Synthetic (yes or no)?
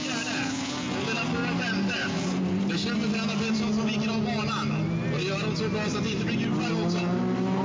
no